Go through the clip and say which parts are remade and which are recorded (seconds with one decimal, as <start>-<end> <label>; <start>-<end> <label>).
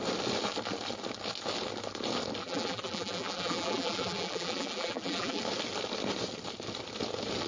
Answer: 0.0-2.4 recorded; 2.4-5.4 remade; 5.4-7.5 recorded